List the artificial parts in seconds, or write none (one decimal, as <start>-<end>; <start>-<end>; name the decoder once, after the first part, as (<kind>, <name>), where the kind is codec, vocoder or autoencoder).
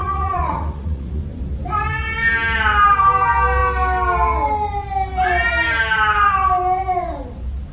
0.0-1.2 (vocoder, Vocos)